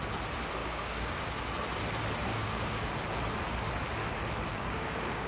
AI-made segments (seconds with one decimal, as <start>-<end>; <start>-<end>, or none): 0.6-1.3; 2.3-2.9; 4.5-5.3